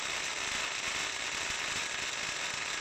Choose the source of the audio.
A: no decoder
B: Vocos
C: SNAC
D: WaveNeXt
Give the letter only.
A